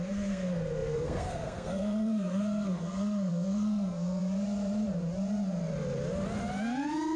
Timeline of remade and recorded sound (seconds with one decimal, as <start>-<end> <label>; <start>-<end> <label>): 0.0-4.2 remade; 4.2-7.2 recorded